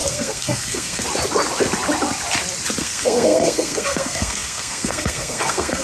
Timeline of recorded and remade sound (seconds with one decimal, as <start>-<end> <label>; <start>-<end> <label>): 0.0-1.0 remade; 1.0-2.8 recorded; 2.8-5.8 remade